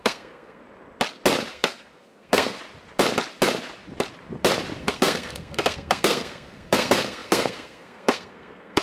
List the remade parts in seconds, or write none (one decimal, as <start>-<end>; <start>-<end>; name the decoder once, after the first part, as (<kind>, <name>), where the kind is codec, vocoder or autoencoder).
0.0-0.6 (codec, SNAC); 1.5-2.6; 4.8-8.8